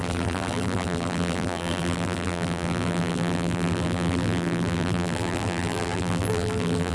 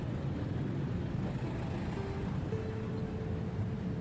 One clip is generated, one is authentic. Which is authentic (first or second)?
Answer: second